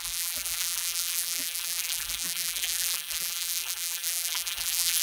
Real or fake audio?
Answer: fake